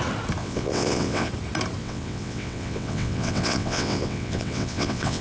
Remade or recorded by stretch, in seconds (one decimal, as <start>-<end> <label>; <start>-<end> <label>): 0.0-0.4 recorded; 0.4-1.3 remade; 1.3-1.8 recorded; 1.8-5.2 remade